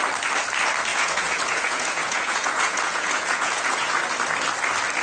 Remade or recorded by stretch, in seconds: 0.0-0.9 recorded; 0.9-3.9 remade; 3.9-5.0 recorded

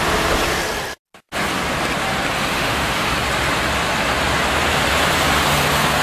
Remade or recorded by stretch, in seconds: 0.0-2.5 recorded; 2.5-3.1 remade; 3.1-6.0 recorded

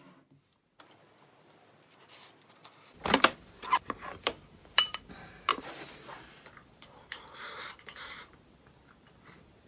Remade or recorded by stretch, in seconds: 0.0-2.6 recorded; 2.6-5.1 remade; 5.1-5.5 recorded; 5.5-8.5 remade; 8.5-9.7 recorded

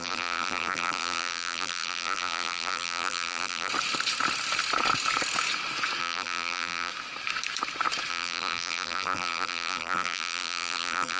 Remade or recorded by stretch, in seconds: 0.0-3.7 remade; 3.7-6.0 recorded; 6.0-6.9 remade; 6.9-8.1 recorded; 8.1-11.2 remade